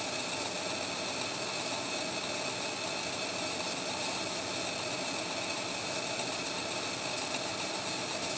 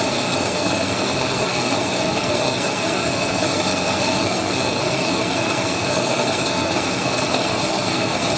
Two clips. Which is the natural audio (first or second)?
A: first